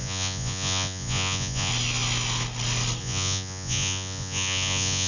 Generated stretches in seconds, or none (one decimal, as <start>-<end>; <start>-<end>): 0.0-1.7; 3.0-5.1